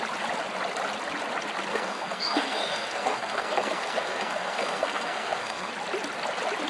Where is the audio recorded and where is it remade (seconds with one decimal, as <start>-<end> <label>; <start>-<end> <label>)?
0.0-1.7 recorded; 1.7-5.7 remade; 5.7-6.7 recorded